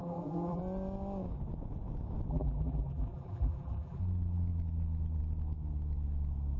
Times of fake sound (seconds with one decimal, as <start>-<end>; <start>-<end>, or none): 0.0-0.6; 2.3-4.0